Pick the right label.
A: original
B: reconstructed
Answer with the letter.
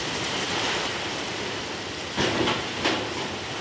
B